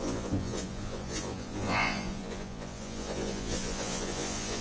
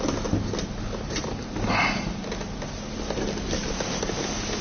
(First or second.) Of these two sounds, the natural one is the second